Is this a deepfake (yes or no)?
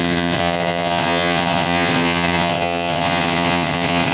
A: yes